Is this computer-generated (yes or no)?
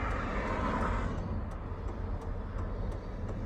no